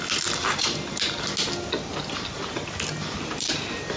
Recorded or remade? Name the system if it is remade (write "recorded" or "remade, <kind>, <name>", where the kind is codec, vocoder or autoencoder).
recorded